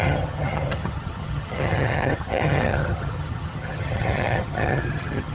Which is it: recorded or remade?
remade